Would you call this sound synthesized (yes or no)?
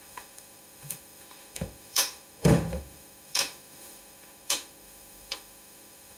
yes